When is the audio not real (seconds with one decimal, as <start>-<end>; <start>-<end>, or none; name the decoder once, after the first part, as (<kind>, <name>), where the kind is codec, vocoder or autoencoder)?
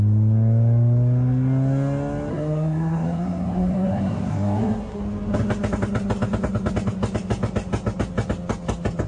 2.3-5.0 (codec, SNAC)